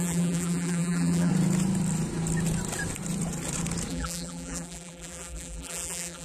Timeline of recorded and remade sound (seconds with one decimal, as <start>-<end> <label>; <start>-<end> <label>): 0.0-1.3 remade; 1.3-3.9 recorded; 3.9-6.2 remade